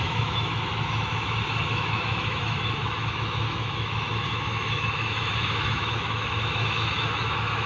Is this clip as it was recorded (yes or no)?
no